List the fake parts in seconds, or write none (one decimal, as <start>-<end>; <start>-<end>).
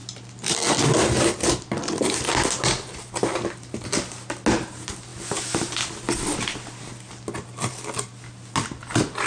none